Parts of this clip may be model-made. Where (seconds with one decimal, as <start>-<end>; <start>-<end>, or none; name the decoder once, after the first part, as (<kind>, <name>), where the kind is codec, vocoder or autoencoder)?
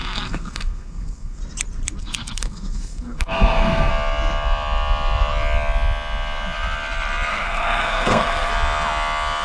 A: 0.0-1.4 (codec, SNAC); 2.0-3.9; 7.3-8.5